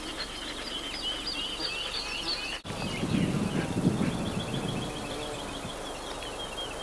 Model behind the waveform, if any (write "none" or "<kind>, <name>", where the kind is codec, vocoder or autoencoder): none